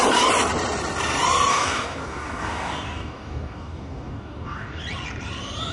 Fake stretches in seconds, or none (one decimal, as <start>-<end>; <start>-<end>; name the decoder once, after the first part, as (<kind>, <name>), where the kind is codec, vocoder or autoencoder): 1.5-4.8 (codec, DAC)